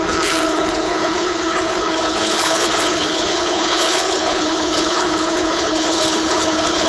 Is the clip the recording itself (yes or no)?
no